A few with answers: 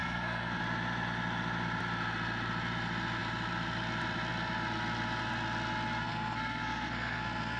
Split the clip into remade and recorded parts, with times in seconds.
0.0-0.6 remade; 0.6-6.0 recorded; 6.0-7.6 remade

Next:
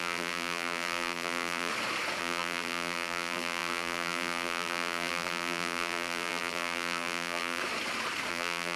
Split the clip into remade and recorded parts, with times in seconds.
0.0-1.7 remade; 1.7-2.2 recorded; 2.2-7.6 remade; 7.6-8.3 recorded; 8.3-8.8 remade

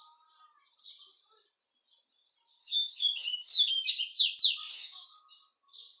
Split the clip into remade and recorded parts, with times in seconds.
0.0-2.6 recorded; 2.6-3.9 remade; 3.9-4.7 recorded; 4.7-5.2 remade; 5.2-6.0 recorded

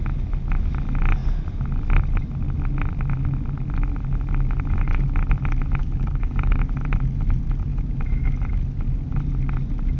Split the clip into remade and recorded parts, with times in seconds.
0.0-5.8 recorded; 5.8-6.6 remade; 6.6-10.0 recorded

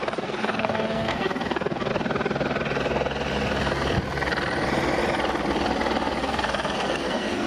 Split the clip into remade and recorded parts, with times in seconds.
0.0-1.9 remade; 1.9-6.2 recorded; 6.2-7.5 remade

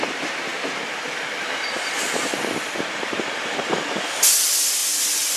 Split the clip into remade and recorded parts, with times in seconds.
0.0-5.4 recorded